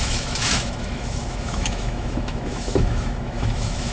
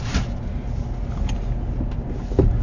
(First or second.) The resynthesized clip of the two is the first